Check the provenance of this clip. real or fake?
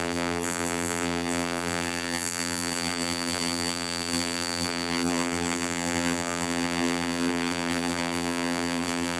fake